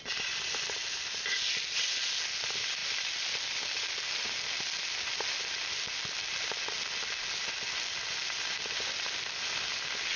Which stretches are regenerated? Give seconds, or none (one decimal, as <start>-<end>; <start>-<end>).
none